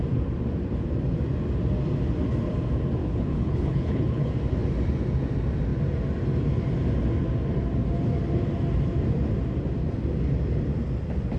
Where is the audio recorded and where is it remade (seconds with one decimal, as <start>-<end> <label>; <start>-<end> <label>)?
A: 0.0-3.0 recorded; 3.0-4.3 remade; 4.3-11.4 recorded